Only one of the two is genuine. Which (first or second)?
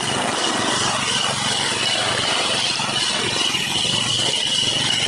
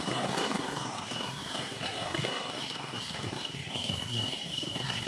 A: first